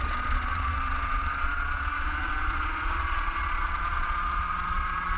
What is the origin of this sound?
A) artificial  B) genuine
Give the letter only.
A